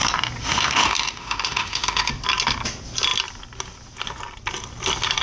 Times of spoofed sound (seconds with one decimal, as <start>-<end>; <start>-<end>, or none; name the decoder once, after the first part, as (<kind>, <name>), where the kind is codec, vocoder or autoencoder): 0.4-2.1 (autoencoder, DAC-VAE)